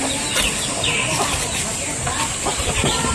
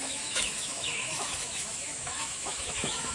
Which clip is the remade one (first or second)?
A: second